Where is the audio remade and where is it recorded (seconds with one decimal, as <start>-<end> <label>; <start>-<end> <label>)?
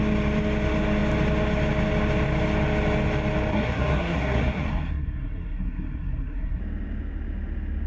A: 0.0-3.5 recorded; 3.5-6.6 remade; 6.6-7.9 recorded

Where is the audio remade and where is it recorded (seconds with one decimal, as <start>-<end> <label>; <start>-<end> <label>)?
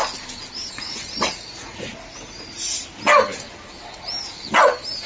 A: 0.0-0.7 recorded; 0.7-1.9 remade; 1.9-5.1 recorded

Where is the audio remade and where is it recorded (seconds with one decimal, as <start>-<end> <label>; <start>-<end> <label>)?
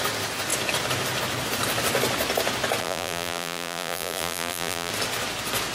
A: 0.0-2.8 recorded; 2.8-4.9 remade; 4.9-5.7 recorded